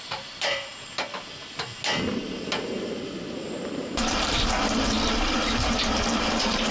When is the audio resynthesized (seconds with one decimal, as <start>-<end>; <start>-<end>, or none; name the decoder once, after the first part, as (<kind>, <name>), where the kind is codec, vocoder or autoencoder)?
0.0-0.7 (vocoder, BigVGAN v2); 3.8-6.7